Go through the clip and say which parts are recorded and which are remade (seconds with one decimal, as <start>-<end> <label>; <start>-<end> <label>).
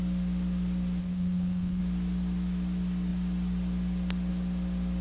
0.0-1.0 recorded; 1.0-1.8 remade; 1.8-5.0 recorded